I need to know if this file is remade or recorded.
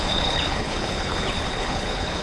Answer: remade